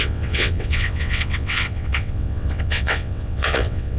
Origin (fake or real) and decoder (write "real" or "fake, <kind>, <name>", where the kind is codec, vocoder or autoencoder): fake, vocoder, WaveNeXt